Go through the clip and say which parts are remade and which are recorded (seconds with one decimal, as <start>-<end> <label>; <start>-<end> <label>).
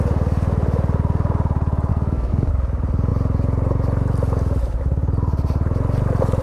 0.0-1.9 recorded; 1.9-2.5 remade; 2.5-6.4 recorded